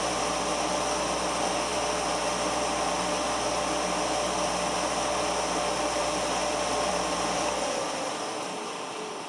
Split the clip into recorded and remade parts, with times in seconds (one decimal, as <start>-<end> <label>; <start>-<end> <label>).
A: 0.0-6.4 recorded; 6.4-8.2 remade; 8.2-9.3 recorded